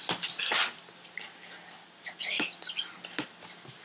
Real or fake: real